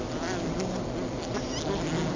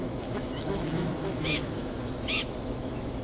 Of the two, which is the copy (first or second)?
second